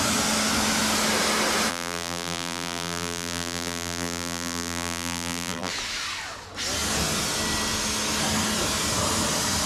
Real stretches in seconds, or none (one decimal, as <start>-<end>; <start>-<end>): 0.0-1.7; 5.7-9.7